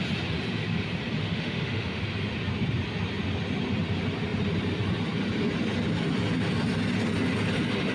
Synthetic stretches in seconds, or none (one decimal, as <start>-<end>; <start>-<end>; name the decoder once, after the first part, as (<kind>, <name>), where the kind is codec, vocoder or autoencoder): 1.2-2.0 (autoencoder, DAC-VAE)